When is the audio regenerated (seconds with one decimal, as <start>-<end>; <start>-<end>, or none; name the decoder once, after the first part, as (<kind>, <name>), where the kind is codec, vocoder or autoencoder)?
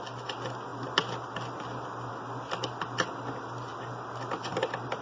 none